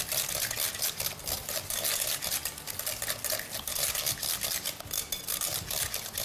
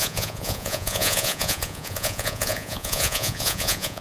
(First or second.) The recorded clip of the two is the first